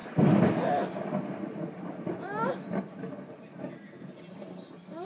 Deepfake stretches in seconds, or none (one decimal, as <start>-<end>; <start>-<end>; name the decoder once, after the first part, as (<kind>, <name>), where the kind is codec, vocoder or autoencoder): none